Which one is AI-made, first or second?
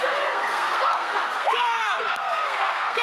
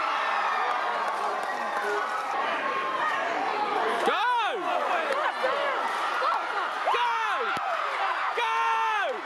first